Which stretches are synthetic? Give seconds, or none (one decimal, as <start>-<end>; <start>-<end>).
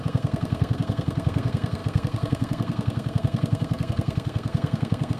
0.0-5.2